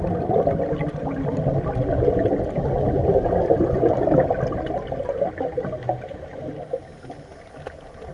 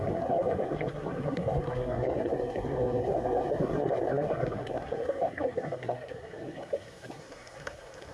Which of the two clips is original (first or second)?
first